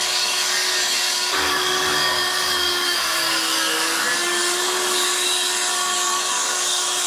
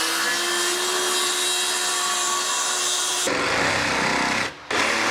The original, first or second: second